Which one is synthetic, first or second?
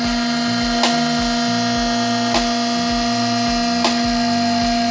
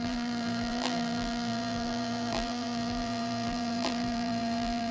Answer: second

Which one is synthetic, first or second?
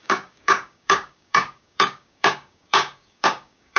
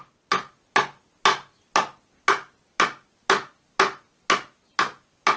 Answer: first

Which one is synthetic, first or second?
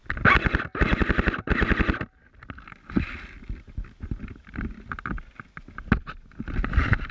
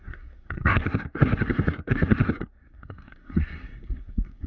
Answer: second